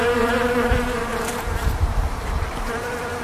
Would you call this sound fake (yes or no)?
yes